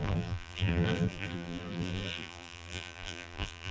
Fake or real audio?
fake